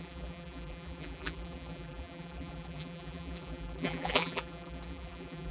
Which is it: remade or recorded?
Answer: remade